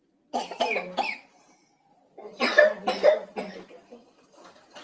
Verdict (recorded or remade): remade